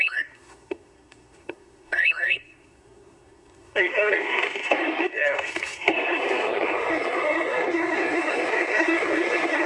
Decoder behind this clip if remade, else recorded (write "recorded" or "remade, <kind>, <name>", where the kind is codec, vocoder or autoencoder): remade, codec, SNAC